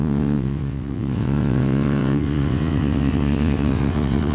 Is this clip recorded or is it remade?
remade